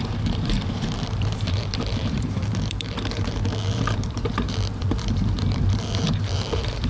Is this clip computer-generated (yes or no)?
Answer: yes